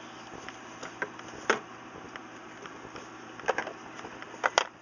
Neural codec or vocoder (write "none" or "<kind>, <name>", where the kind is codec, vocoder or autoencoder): none